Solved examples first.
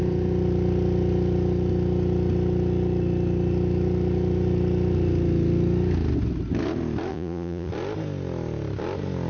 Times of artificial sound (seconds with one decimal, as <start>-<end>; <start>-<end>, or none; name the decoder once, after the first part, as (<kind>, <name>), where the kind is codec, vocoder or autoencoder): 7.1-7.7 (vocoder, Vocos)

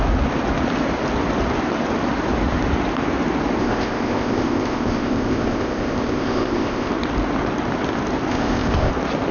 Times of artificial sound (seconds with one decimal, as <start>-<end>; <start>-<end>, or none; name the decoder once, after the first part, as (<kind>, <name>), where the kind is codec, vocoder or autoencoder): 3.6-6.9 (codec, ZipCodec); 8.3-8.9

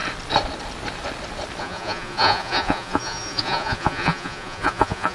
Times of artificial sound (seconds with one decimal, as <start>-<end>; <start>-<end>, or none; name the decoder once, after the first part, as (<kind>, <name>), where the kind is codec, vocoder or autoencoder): 1.6-5.1 (vocoder, Vocos)